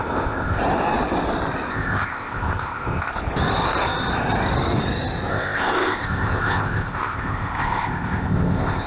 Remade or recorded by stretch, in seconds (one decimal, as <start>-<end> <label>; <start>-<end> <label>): 0.0-0.6 remade; 0.6-1.7 recorded; 1.7-3.1 remade; 3.1-5.3 recorded; 5.3-8.9 remade